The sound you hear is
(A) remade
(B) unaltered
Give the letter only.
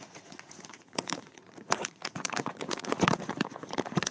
A